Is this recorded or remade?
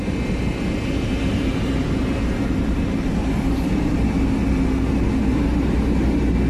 recorded